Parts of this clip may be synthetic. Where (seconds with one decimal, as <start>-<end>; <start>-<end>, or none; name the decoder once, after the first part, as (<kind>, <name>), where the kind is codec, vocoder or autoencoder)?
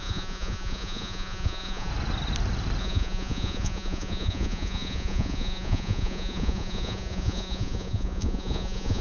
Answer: 0.0-1.9 (vocoder, Vocos); 2.8-9.0